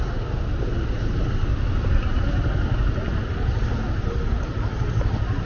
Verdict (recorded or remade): recorded